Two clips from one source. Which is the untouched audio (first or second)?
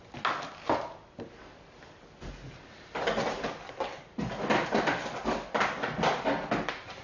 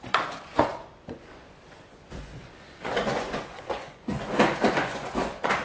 first